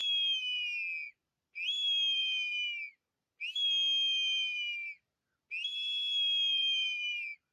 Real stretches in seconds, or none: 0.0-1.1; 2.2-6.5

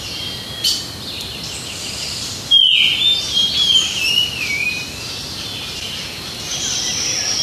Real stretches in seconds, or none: 0.0-4.5; 6.0-7.4

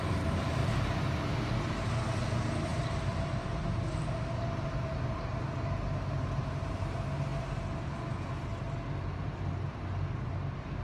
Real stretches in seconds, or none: 0.0-0.6; 1.5-2.7; 4.3-10.8